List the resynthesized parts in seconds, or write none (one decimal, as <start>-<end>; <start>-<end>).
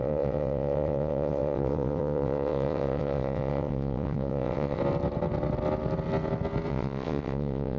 0.0-4.8; 6.7-7.8